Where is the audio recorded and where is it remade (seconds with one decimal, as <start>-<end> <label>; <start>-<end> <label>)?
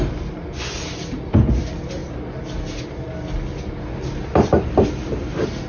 0.0-5.7 recorded